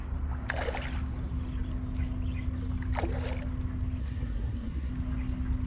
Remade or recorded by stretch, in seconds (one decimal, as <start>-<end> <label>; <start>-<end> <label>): 0.0-4.0 recorded; 4.0-4.9 remade; 4.9-5.7 recorded